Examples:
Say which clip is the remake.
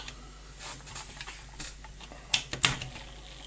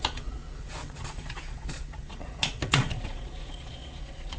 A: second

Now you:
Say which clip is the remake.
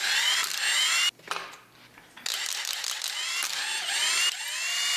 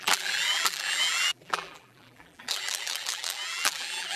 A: second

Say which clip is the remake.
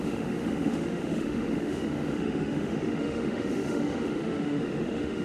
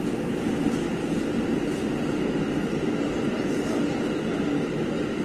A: first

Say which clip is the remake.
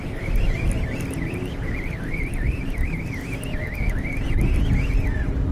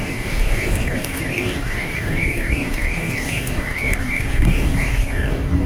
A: second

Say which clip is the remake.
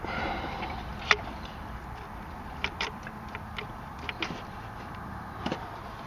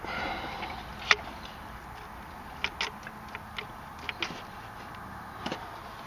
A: first